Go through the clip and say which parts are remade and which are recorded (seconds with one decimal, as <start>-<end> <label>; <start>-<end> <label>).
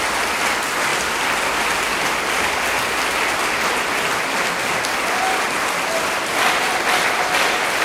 0.0-0.9 recorded; 0.9-3.0 remade; 3.0-7.8 recorded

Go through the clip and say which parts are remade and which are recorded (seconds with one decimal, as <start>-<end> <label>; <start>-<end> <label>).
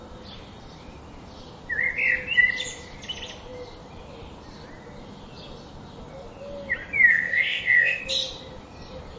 0.0-7.1 recorded; 7.1-8.0 remade; 8.0-9.2 recorded